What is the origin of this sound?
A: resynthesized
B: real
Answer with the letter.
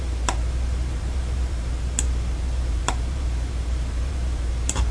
A